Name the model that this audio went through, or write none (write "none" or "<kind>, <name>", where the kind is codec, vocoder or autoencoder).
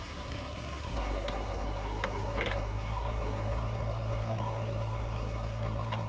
codec, SNAC